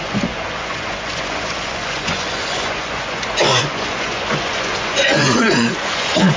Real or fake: fake